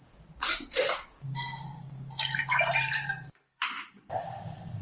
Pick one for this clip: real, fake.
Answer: fake